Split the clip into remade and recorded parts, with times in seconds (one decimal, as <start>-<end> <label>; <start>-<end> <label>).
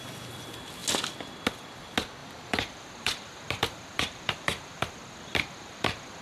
0.0-2.2 recorded; 2.2-6.2 remade